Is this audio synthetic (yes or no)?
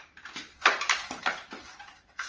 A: yes